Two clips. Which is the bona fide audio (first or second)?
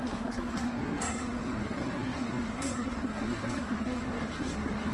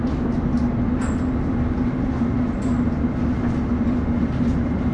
second